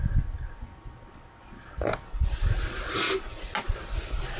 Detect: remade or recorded recorded